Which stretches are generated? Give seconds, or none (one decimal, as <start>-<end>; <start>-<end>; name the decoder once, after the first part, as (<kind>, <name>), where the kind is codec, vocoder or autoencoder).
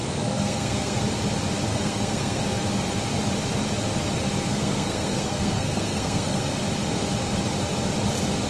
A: 0.0-1.0 (codec, SNAC); 1.7-2.4; 4.5-6.6